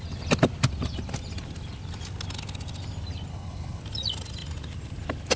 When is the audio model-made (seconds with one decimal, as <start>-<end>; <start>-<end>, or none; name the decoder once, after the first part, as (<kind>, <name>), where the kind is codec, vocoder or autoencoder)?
3.3-3.8 (codec, HILCodec)